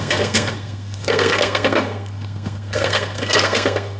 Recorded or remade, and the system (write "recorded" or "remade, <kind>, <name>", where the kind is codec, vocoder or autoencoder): remade, codec, SNAC